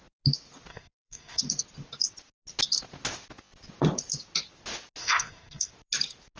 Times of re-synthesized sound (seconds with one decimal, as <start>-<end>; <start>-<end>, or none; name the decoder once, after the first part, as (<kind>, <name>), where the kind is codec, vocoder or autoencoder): 0.7-1.4 (codec, SNAC); 5.0-5.7